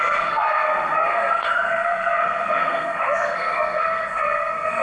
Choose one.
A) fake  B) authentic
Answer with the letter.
A